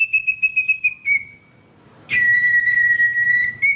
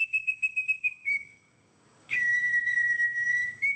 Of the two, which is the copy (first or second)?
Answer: second